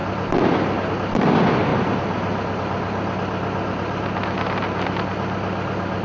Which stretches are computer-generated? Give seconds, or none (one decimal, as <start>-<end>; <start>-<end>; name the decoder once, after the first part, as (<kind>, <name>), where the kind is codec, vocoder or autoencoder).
none